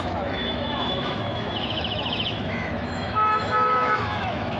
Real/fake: fake